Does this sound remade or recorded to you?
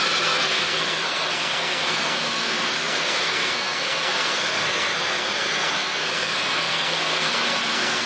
remade